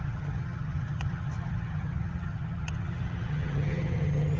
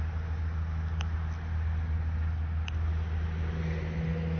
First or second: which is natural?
second